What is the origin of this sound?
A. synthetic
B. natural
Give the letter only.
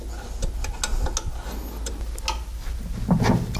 B